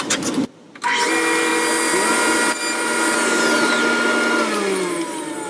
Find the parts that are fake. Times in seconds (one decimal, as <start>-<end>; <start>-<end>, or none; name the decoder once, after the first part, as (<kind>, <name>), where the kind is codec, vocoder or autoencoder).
none